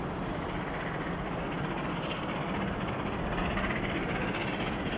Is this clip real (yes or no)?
yes